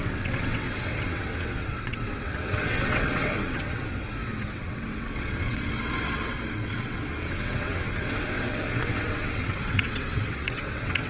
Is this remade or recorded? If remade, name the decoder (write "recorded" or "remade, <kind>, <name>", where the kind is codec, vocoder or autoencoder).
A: remade, vocoder, WaveNeXt